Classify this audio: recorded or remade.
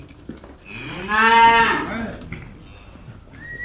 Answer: recorded